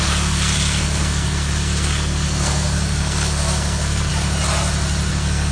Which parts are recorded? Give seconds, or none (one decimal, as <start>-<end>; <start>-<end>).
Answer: 4.1-5.1